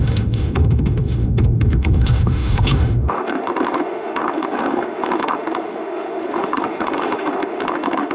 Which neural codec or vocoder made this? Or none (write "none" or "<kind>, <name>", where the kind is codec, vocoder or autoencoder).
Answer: autoencoder, DAC-VAE